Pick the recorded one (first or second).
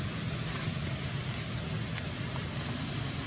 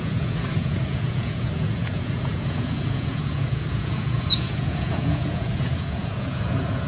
first